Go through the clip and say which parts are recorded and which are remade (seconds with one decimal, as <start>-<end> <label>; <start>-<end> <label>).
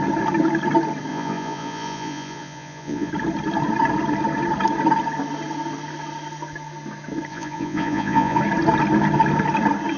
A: 0.0-1.1 recorded; 1.1-3.1 remade; 3.1-7.3 recorded; 7.3-8.4 remade; 8.4-10.0 recorded